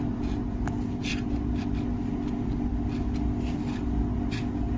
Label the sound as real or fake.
real